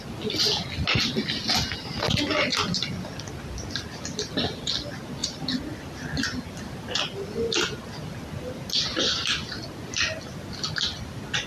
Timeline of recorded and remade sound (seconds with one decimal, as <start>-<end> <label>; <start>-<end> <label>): 0.0-11.5 recorded